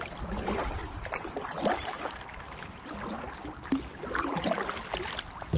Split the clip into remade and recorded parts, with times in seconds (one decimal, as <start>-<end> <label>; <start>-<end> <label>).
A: 0.0-5.6 recorded